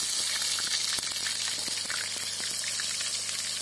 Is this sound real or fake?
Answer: real